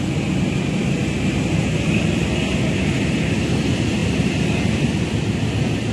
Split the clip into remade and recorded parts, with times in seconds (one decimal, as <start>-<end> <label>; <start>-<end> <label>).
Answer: 0.0-4.0 recorded; 4.0-5.5 remade; 5.5-5.9 recorded